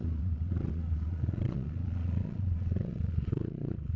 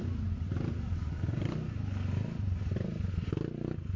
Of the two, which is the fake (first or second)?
first